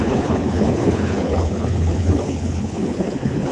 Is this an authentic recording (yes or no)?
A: no